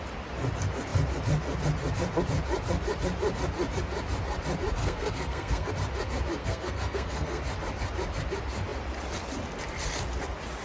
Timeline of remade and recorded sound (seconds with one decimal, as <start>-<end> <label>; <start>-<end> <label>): 0.0-4.8 recorded; 4.8-5.7 remade; 5.7-6.4 recorded; 6.4-7.4 remade; 7.4-10.6 recorded